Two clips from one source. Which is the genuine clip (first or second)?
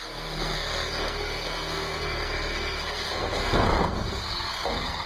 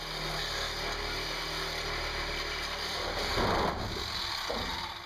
second